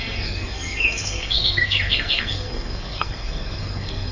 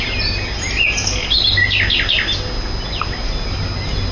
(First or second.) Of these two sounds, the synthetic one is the first